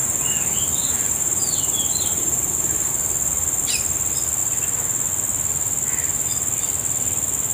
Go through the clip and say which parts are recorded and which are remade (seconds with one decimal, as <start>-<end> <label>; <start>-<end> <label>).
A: 0.0-2.9 remade; 2.9-7.5 recorded